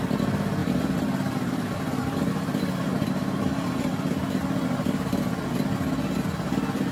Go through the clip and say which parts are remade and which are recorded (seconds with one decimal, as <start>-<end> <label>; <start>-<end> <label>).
0.0-0.6 recorded; 0.6-4.4 remade; 4.4-6.9 recorded